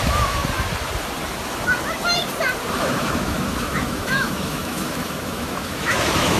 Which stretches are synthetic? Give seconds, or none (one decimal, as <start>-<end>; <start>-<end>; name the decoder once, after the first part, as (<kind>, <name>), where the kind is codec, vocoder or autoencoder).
0.0-0.4 (autoencoder, DAC-VAE); 2.7-6.4

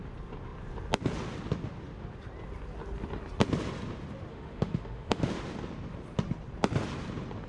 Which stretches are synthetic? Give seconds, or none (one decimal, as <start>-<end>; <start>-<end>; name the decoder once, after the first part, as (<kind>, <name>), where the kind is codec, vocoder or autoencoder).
4.3-5.3 (autoencoder, DAC-VAE)

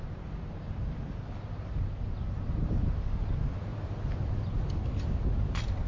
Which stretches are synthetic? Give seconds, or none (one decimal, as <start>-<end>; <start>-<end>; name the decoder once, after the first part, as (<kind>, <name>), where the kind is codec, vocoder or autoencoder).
none